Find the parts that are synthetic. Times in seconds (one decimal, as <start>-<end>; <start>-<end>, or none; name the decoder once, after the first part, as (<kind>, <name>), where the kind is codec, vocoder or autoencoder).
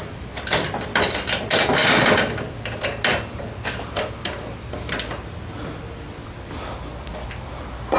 none